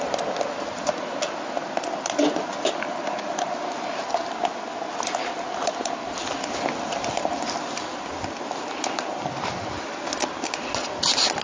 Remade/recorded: recorded